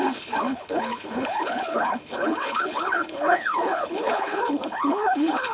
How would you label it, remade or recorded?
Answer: remade